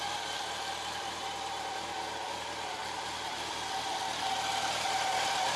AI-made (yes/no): no